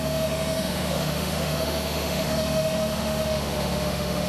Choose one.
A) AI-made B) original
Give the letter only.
A